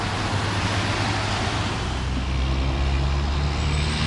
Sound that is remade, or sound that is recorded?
recorded